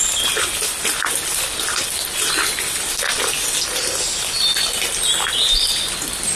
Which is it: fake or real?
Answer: real